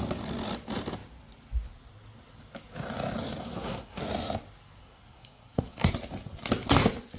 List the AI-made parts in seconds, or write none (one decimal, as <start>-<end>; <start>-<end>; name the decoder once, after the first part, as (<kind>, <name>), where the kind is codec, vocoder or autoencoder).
3.4-4.0 (codec, SNAC); 4.8-5.9